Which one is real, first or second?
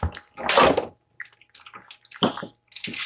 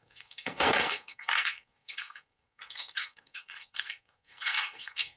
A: first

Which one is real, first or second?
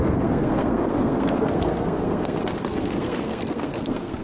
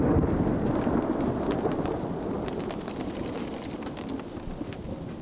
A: second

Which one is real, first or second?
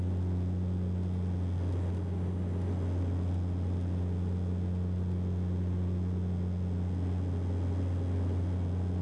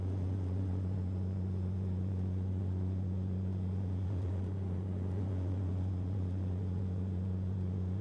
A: first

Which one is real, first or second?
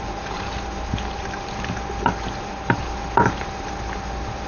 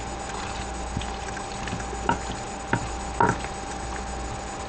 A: second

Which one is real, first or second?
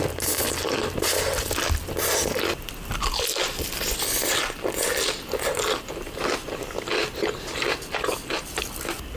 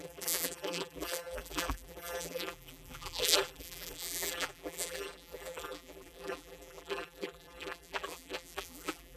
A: first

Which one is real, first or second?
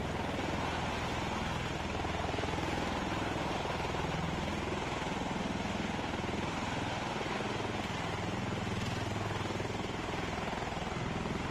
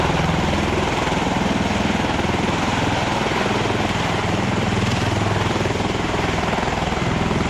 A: first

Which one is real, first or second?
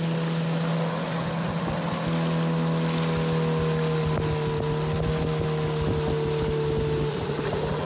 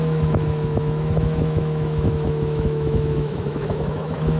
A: first